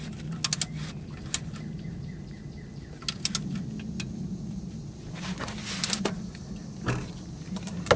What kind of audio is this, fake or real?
real